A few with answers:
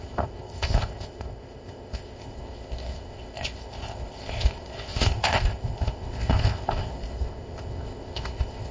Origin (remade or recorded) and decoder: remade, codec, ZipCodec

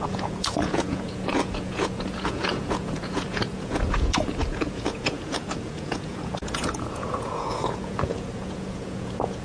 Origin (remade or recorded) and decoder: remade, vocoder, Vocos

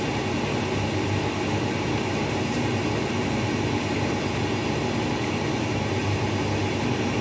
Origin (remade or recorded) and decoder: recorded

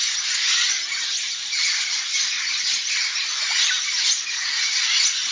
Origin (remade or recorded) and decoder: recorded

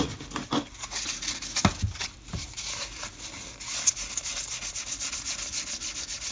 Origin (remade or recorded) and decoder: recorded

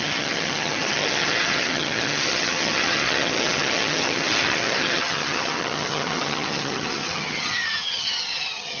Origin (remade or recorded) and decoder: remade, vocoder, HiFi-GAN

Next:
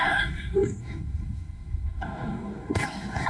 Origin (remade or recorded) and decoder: remade, codec, SNAC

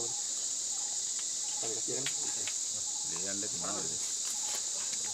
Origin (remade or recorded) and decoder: recorded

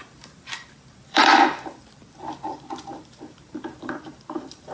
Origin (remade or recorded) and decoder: remade, vocoder, BigVGAN v2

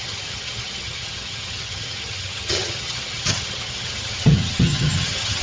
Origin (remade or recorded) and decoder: remade, vocoder, HiFi-GAN